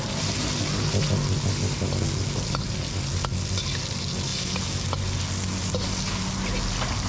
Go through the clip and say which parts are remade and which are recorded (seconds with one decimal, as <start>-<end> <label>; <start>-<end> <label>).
0.0-7.1 recorded